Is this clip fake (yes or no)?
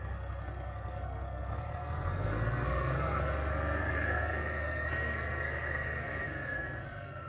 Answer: yes